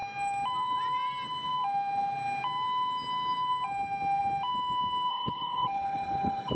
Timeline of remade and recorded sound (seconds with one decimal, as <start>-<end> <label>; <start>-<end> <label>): 0.0-5.1 recorded; 5.1-6.5 remade